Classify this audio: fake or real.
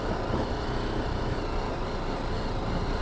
real